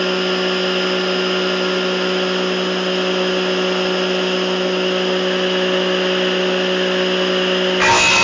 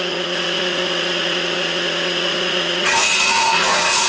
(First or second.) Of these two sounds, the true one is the first